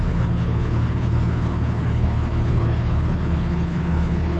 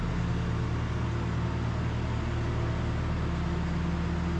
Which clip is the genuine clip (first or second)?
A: second